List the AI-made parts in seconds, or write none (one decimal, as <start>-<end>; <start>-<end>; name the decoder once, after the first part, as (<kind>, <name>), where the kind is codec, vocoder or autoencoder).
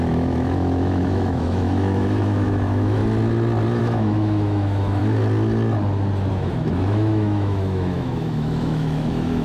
0.0-3.0 (autoencoder, DAC-VAE); 3.8-5.0; 6.3-9.4